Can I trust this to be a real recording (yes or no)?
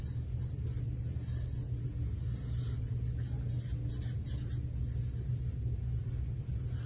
yes